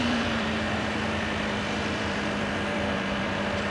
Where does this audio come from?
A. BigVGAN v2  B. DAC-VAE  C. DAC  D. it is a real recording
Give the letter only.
A